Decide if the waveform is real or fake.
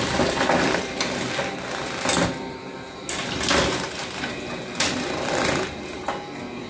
real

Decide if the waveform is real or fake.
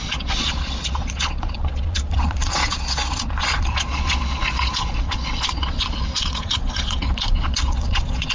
fake